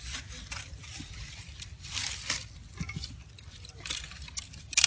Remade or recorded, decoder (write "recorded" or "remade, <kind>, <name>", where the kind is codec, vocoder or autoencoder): remade, vocoder, BigVGAN v2